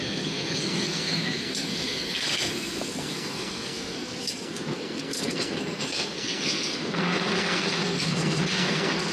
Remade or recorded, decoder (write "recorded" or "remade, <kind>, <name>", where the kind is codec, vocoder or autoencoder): remade, codec, SNAC